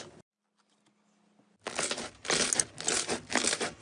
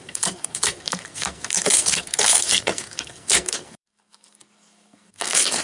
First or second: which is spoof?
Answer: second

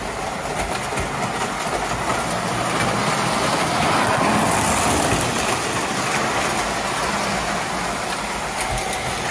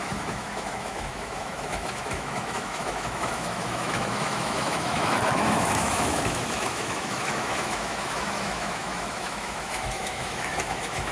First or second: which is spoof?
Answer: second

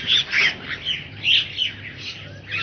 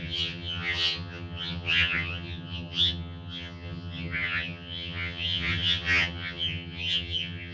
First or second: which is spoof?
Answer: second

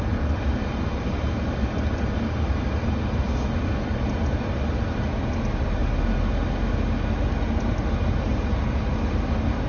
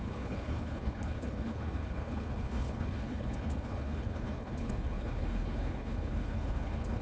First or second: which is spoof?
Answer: second